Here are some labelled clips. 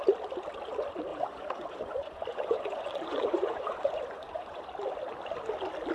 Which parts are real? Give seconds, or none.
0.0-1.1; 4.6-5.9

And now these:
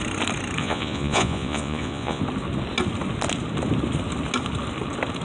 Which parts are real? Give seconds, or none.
0.0-0.6; 2.2-5.2

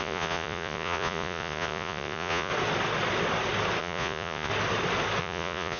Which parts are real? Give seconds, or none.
2.5-3.8; 4.5-5.2

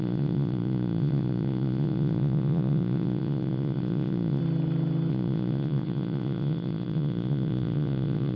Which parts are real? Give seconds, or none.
4.4-5.1

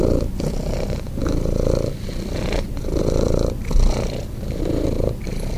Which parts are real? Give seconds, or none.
0.0-5.6

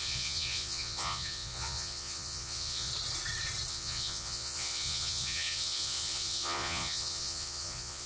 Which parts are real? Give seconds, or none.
2.9-3.7

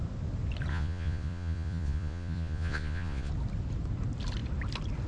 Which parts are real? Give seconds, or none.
0.0-0.7; 3.3-5.1